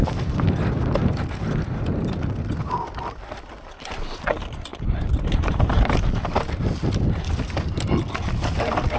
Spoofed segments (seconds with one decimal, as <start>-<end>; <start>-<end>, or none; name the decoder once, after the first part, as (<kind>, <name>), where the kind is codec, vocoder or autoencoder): 4.7-6.5 (vocoder, BigVGAN v2)